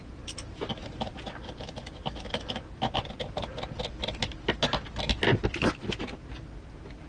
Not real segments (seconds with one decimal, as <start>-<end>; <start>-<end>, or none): none